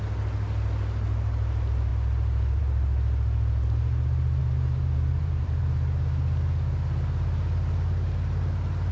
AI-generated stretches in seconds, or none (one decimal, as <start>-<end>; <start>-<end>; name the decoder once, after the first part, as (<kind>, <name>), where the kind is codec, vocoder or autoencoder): 4.4-5.6 (vocoder, BigVGAN v2)